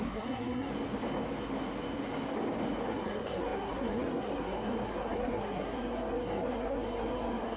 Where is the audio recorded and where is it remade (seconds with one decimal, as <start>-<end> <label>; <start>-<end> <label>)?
0.0-0.7 remade; 0.7-2.9 recorded; 2.9-7.6 remade